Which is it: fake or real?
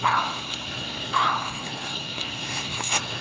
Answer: fake